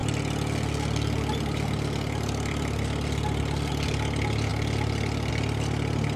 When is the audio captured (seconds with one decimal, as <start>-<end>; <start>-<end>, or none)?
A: 0.0-6.2